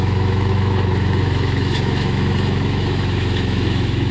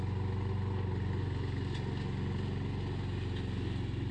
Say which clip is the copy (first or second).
first